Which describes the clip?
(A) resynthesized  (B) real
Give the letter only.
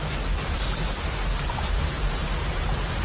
A